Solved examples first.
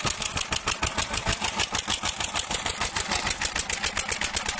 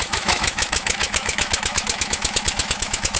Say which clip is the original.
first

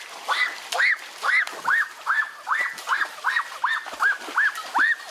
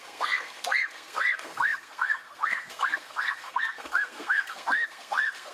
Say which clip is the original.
first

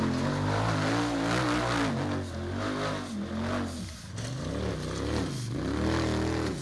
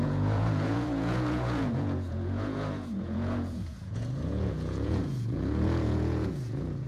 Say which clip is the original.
first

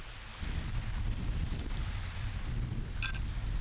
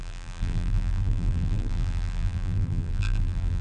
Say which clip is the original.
first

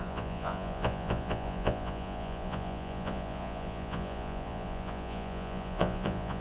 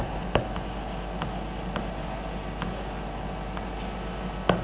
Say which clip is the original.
second